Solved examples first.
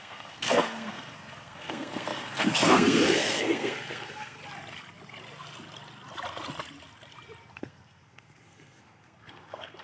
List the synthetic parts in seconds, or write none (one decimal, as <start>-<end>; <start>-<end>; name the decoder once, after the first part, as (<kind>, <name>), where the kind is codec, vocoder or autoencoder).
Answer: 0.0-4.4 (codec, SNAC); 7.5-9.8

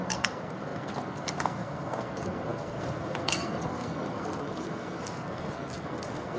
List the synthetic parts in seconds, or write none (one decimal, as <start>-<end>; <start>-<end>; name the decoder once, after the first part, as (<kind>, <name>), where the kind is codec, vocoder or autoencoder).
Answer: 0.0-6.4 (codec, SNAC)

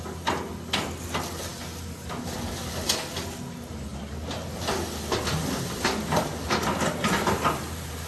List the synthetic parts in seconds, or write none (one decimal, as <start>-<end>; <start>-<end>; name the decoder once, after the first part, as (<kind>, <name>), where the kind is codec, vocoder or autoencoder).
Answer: none

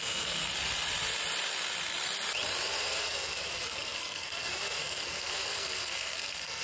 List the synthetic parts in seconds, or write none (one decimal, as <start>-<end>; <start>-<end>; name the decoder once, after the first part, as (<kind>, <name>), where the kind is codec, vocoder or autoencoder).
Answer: 0.0-0.4 (codec, SNAC); 2.8-6.6

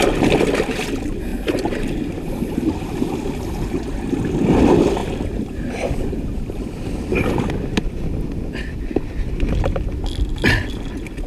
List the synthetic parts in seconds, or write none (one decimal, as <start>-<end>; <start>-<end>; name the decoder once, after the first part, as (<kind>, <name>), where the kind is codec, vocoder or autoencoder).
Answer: none

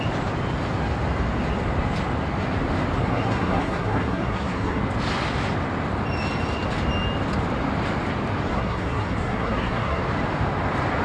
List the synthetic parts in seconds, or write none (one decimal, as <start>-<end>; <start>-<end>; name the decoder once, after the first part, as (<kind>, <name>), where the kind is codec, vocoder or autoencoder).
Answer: 3.0-4.8 (codec, SNAC); 8.5-10.0

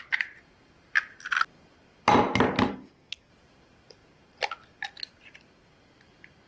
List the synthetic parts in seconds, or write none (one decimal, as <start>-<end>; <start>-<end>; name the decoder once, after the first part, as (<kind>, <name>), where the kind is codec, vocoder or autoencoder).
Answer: 2.7-3.3 (codec, SNAC)

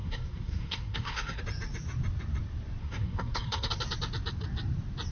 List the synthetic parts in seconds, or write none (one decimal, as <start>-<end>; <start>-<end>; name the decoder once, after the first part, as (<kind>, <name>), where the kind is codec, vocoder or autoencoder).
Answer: 0.0-1.4 (codec, SNAC); 2.8-3.7